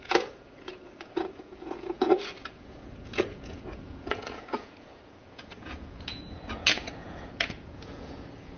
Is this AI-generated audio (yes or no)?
yes